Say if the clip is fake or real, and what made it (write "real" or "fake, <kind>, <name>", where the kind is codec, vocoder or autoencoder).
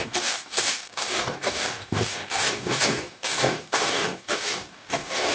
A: fake, codec, DAC